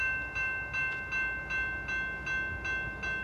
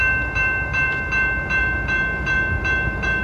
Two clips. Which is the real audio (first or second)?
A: first